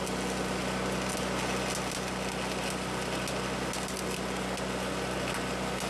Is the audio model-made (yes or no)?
no